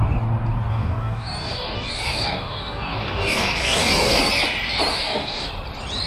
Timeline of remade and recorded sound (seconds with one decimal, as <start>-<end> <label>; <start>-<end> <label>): 0.0-0.7 recorded; 0.7-4.2 remade; 4.2-4.9 recorded; 4.9-5.5 remade; 5.5-6.1 recorded